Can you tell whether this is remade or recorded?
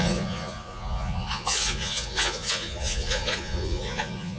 remade